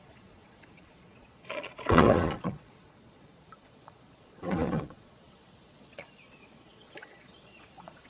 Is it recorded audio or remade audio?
remade